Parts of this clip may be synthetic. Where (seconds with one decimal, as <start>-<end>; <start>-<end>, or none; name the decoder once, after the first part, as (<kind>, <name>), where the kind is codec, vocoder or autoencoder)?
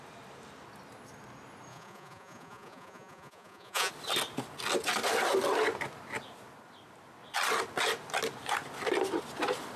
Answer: 1.7-3.9 (vocoder, Vocos)